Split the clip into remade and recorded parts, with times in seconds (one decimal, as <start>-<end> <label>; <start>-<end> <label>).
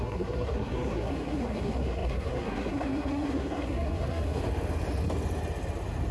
0.0-4.4 remade; 4.4-6.1 recorded